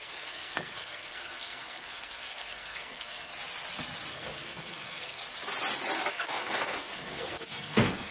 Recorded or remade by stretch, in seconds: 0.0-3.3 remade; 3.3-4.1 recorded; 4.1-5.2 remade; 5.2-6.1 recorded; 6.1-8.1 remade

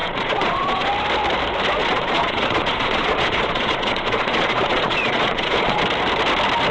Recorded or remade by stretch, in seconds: 0.0-0.9 remade; 0.9-1.8 recorded; 1.8-5.8 remade; 5.8-6.7 recorded

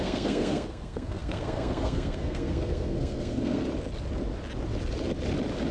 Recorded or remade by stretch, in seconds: 0.0-3.6 remade; 3.6-5.7 recorded